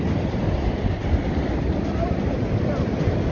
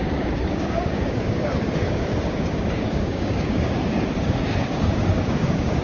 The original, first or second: first